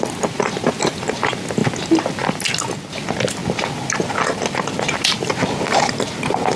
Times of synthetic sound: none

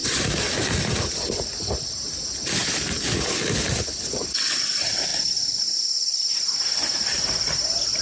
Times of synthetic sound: none

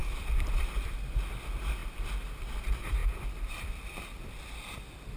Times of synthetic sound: 0.0-0.6 (vocoder, BigVGAN v2); 1.8-2.6; 3.0-4.2

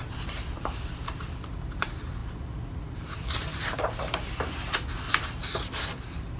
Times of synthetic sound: 0.0-2.2 (vocoder, BigVGAN v2); 2.8-6.4

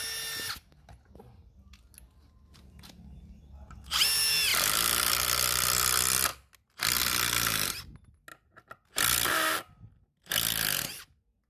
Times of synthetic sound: 4.5-5.1 (vocoder, BigVGAN v2)

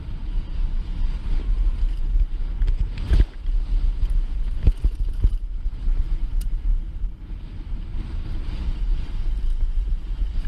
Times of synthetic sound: 0.0-1.4 (vocoder, BigVGAN v2); 5.8-6.7; 8.1-10.5

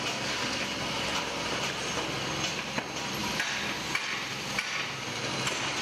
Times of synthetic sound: 1.1-1.7 (vocoder, BigVGAN v2); 3.2-5.8